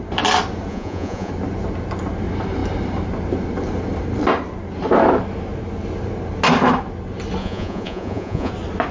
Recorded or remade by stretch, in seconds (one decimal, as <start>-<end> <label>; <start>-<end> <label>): 0.0-0.7 recorded; 0.7-1.3 remade; 1.3-7.4 recorded; 7.4-8.5 remade; 8.5-8.9 recorded